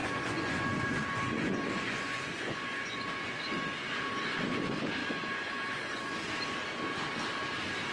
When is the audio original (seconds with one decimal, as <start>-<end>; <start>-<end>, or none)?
4.0-5.0; 6.3-7.9